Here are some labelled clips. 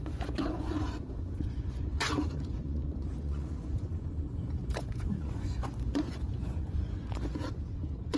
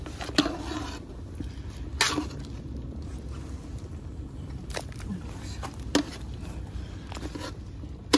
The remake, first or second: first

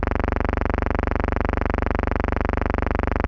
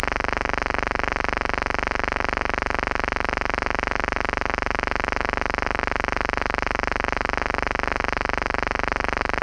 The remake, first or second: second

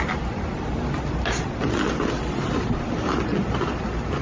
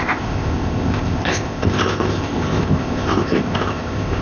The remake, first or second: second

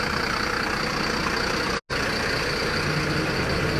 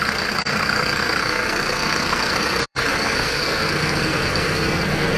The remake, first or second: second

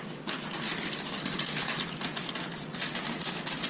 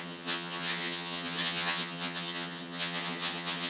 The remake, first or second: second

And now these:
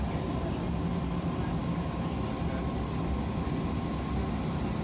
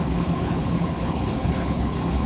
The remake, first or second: second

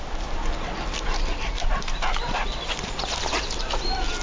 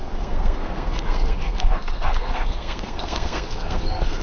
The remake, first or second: second